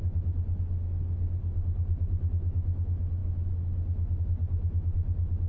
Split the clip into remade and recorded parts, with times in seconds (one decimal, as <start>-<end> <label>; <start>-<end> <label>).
0.0-5.5 recorded